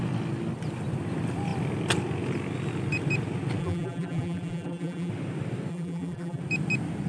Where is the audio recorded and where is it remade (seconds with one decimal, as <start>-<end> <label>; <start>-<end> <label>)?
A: 0.0-3.6 recorded; 3.6-5.1 remade; 5.1-5.7 recorded; 5.7-6.4 remade; 6.4-7.1 recorded